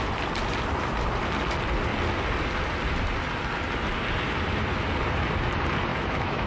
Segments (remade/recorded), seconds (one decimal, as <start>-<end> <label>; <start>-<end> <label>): 0.0-5.9 recorded; 5.9-6.5 remade